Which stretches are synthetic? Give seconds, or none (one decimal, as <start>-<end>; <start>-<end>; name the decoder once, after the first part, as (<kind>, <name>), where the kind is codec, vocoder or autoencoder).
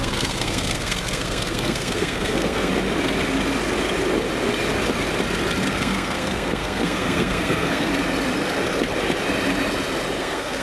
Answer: 0.0-2.7 (codec, SNAC); 5.7-7.9; 10.2-10.6